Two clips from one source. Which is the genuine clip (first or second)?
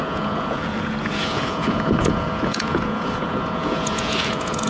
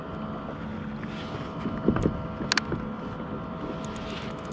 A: second